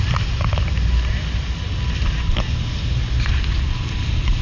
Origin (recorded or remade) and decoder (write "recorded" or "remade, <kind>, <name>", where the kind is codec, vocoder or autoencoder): recorded